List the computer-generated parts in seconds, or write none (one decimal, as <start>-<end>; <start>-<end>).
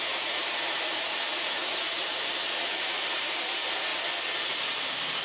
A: 0.0-1.6; 2.8-3.9; 4.4-5.2